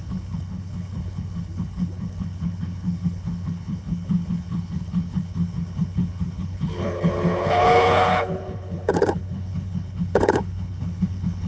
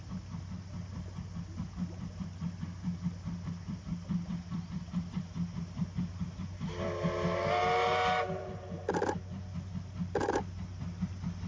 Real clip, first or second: second